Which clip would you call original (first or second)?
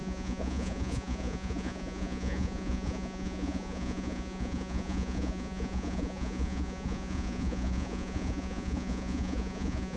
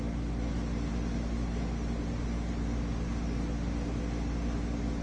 second